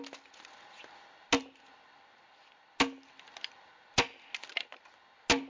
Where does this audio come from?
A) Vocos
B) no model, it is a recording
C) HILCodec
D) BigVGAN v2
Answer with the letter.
B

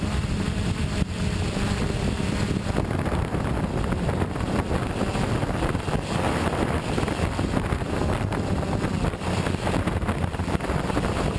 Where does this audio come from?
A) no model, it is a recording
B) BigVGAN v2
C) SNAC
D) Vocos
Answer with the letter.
B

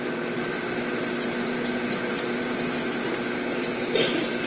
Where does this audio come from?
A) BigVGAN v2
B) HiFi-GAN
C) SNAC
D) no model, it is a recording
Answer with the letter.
D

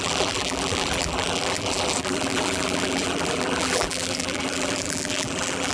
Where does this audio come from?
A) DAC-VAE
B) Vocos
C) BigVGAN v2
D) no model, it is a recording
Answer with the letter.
C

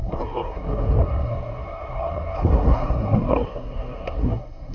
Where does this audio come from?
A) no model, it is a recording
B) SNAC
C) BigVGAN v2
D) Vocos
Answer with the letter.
B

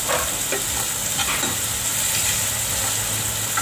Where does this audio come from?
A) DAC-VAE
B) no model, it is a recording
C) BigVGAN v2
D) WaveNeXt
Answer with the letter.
B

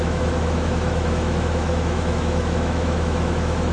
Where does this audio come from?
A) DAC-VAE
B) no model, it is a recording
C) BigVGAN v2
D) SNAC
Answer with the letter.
A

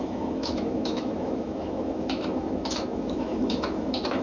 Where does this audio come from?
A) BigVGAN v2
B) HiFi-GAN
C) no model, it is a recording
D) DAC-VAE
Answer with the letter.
D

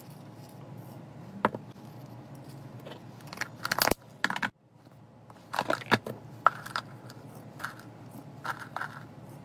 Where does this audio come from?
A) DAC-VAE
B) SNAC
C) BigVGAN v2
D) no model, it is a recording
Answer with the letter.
D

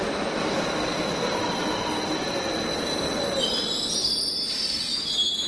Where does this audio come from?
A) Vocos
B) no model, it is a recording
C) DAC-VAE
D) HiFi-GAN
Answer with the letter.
B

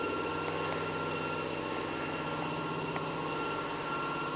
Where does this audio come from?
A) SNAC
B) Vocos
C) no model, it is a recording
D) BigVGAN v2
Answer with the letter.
C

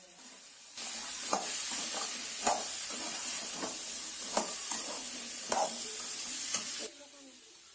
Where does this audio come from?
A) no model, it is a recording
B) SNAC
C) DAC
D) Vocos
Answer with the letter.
A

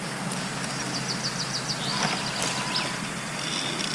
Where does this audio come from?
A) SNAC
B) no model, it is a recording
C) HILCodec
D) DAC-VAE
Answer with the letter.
B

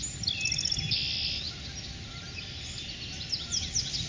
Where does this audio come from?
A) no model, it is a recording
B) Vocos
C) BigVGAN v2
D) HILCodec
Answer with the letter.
A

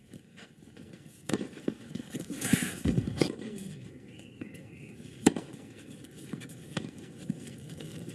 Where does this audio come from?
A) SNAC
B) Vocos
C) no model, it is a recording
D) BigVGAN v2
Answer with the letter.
A